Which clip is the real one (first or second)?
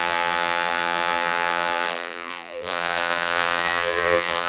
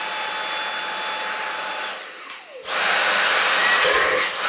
second